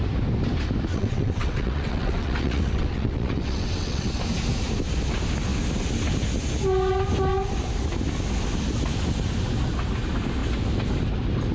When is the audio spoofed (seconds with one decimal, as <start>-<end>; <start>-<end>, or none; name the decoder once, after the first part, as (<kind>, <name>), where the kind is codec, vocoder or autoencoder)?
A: 0.9-4.1 (vocoder, WaveNeXt)